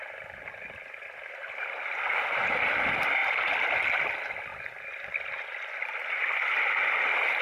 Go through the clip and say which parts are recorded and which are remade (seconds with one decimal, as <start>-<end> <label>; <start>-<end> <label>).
0.0-7.4 recorded